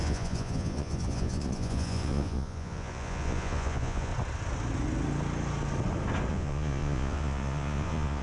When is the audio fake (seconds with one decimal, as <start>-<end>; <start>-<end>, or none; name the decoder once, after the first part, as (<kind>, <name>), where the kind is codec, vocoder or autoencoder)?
0.0-4.1 (vocoder, Vocos); 6.3-8.2